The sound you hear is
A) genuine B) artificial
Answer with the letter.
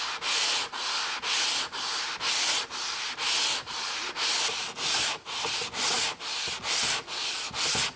A